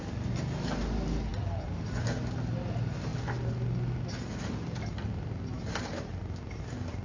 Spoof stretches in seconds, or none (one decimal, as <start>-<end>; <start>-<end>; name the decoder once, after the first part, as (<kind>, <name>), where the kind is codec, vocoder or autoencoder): 5.5-6.2 (vocoder, BigVGAN v2)